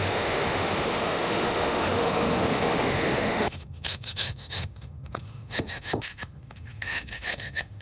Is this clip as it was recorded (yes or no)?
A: no